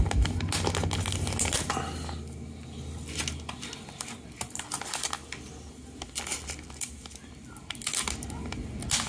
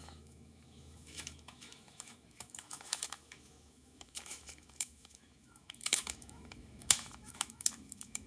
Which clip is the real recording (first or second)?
first